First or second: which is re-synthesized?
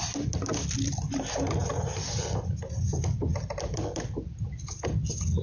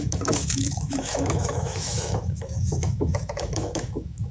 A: second